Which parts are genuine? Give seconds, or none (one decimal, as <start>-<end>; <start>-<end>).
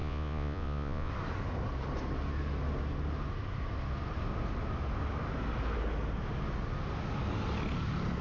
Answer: 1.1-8.2